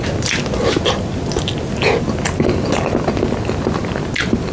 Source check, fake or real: real